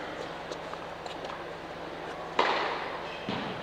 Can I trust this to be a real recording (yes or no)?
yes